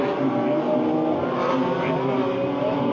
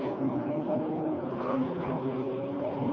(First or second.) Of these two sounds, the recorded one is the first